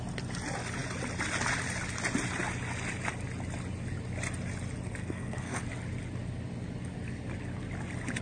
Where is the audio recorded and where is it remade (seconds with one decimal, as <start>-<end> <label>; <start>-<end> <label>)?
0.0-5.0 recorded; 5.0-5.6 remade; 5.6-8.2 recorded